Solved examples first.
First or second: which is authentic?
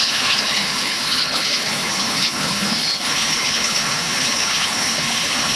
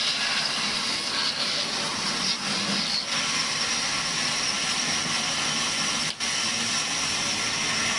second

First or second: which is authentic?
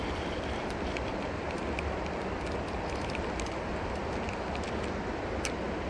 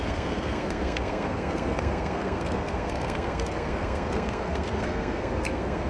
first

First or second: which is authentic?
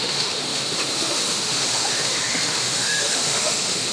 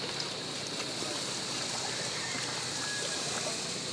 second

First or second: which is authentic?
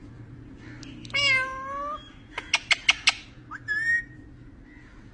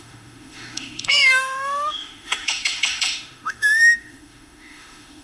first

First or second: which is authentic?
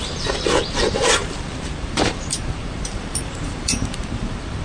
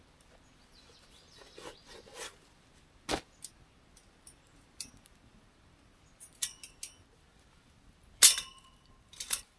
second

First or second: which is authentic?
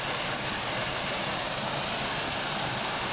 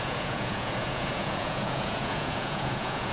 first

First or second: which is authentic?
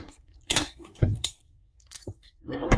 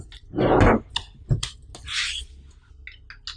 second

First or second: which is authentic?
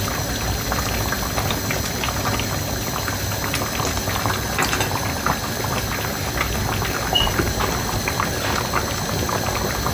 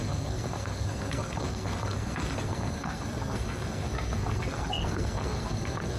first